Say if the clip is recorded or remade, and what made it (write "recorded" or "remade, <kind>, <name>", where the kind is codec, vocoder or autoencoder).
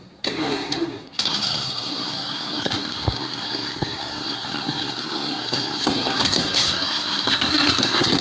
remade, codec, SNAC